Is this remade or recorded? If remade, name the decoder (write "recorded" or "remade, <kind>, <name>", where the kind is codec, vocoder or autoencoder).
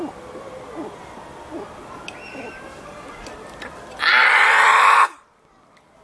recorded